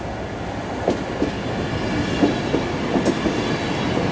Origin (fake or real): real